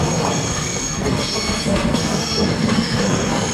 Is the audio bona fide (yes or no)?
no